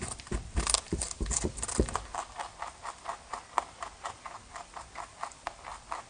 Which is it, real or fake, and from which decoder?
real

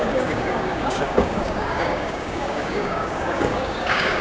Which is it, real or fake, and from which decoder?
fake, codec, DAC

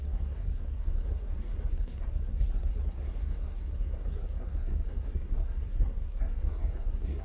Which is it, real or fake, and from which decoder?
fake, codec, SNAC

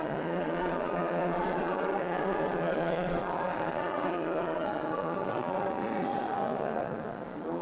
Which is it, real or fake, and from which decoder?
fake, vocoder, Vocos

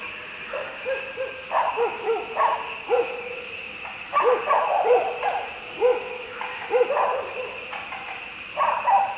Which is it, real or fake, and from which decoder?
real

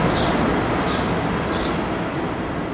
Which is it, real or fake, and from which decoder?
real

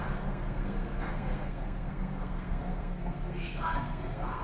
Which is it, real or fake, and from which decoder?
fake, codec, SNAC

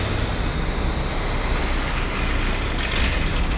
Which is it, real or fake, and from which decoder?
real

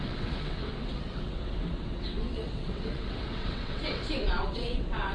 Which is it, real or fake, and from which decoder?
fake, vocoder, WaveNeXt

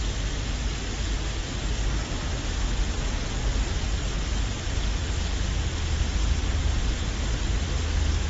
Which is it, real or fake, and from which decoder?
real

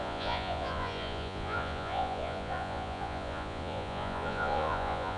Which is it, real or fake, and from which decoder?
fake, vocoder, Vocos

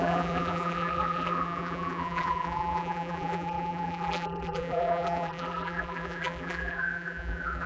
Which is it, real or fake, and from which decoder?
fake, vocoder, BigVGAN v2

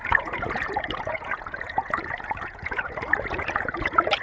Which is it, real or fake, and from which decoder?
fake, vocoder, Vocos